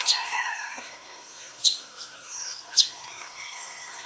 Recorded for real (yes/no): no